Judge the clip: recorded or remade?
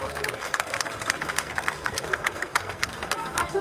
remade